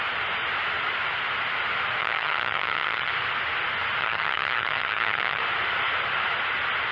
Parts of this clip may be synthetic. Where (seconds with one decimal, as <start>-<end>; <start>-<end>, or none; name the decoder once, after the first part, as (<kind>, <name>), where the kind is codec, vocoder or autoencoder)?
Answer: 2.0-3.1 (vocoder, HiFi-GAN); 4.0-5.4